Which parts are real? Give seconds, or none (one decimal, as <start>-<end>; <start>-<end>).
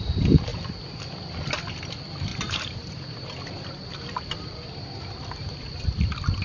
0.0-2.3; 5.5-6.4